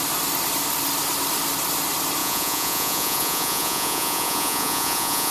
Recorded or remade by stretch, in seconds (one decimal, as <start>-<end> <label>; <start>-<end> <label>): 0.0-2.2 recorded; 2.2-5.3 remade